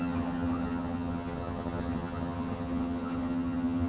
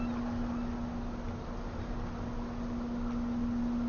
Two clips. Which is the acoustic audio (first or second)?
second